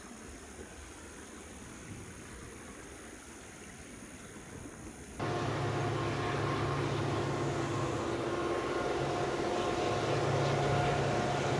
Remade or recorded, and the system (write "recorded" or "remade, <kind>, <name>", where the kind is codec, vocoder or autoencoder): recorded